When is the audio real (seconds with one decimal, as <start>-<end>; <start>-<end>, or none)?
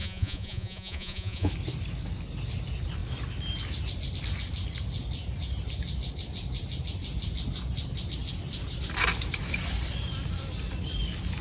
1.5-11.4